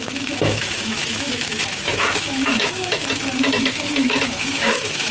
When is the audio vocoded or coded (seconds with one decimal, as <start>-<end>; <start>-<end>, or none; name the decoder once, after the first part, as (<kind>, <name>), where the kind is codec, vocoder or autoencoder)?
0.0-5.1 (autoencoder, DAC-VAE)

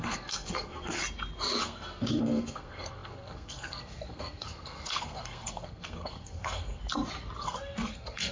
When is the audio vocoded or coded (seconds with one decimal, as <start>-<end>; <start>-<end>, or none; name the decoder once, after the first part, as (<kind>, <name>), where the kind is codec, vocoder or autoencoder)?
0.0-1.0 (codec, SNAC); 1.6-6.8; 7.4-8.3

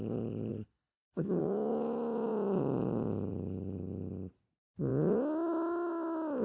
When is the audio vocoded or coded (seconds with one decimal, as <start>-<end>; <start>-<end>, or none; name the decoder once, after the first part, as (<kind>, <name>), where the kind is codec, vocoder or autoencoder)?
0.5-1.4 (codec, HILCodec)

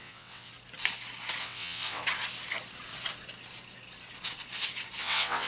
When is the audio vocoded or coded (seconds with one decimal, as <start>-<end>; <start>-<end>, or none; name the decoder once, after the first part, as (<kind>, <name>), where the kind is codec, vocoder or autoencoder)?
0.0-0.5 (vocoder, WaveNeXt); 1.4-2.0; 5.0-5.5

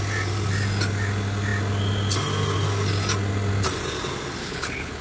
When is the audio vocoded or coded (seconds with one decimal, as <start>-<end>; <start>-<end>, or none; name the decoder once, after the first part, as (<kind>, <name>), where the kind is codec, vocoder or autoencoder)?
4.4-5.0 (codec, HILCodec)

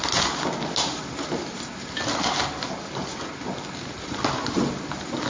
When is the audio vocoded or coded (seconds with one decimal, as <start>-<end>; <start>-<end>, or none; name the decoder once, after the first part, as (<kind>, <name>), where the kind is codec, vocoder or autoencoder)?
none

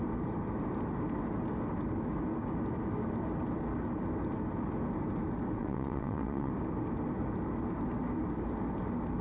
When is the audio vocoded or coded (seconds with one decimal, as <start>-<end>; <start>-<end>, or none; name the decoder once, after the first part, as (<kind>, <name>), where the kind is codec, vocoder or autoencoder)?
5.6-6.5 (vocoder, WaveNeXt)

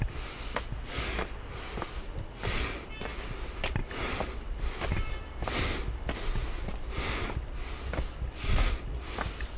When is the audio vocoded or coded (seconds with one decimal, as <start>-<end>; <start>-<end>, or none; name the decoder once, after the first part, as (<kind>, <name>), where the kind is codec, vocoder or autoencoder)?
none